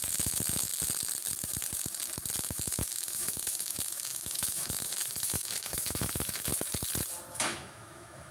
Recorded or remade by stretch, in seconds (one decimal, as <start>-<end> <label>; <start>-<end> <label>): 0.0-0.7 remade; 0.7-2.4 recorded; 2.4-6.5 remade; 6.5-7.3 recorded; 7.3-8.3 remade